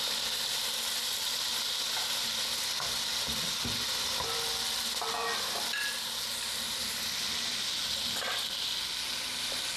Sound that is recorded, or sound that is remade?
recorded